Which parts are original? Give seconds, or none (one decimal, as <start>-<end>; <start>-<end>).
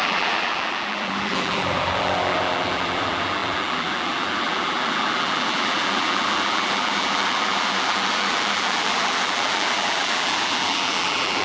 none